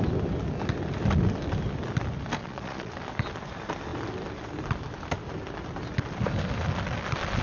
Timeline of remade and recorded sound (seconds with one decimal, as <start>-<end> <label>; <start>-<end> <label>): 0.0-2.4 recorded; 2.4-2.9 remade; 2.9-7.4 recorded